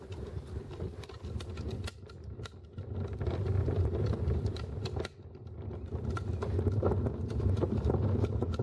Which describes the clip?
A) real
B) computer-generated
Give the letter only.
A